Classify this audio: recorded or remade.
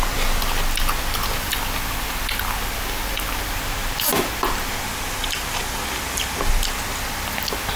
recorded